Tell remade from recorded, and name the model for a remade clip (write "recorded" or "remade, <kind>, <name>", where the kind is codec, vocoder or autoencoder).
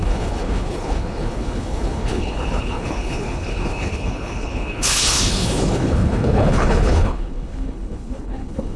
remade, codec, HILCodec